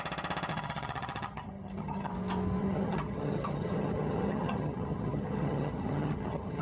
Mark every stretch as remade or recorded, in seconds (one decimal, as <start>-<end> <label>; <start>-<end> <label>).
0.0-0.5 recorded; 0.5-2.1 remade; 2.1-2.6 recorded; 2.6-6.6 remade